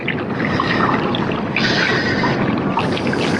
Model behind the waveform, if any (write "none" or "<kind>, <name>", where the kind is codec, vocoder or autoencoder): none